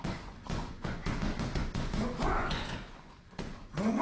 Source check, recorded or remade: remade